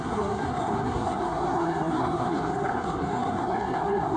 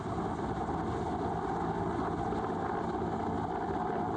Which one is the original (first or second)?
second